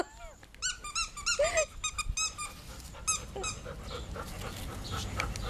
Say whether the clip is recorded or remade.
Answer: recorded